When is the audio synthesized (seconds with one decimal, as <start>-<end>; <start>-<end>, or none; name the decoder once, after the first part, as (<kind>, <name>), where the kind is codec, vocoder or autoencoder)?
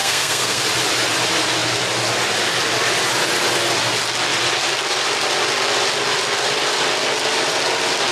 0.0-0.6 (codec, SNAC)